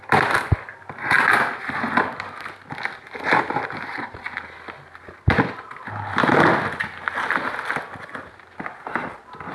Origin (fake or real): real